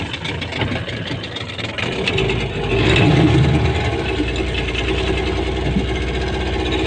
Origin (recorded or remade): recorded